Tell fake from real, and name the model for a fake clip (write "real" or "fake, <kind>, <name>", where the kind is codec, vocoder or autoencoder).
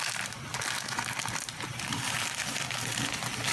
real